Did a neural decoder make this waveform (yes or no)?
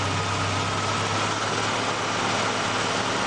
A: no